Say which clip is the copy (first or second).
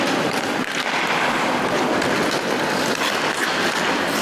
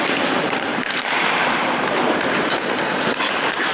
second